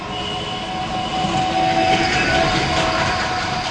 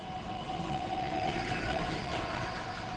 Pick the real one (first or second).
first